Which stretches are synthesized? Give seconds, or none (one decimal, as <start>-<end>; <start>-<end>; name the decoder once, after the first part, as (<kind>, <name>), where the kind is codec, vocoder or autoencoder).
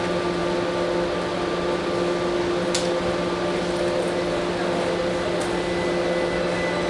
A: none